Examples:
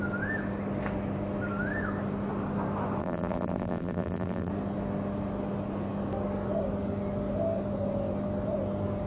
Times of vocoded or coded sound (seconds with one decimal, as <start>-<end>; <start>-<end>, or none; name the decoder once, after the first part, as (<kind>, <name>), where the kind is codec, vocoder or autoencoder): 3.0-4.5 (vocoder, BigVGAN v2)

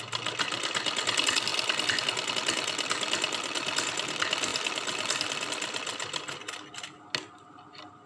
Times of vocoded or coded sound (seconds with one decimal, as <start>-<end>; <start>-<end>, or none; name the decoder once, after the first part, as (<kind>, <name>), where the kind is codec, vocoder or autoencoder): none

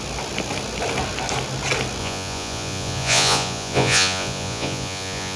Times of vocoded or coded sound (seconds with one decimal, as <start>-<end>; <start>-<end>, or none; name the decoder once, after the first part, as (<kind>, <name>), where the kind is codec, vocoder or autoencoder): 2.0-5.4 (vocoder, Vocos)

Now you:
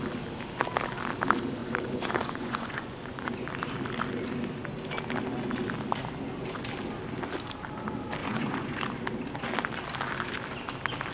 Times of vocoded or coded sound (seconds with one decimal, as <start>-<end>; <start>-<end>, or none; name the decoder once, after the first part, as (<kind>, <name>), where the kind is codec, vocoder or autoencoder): 1.6-3.5 (vocoder, Vocos); 8.2-8.8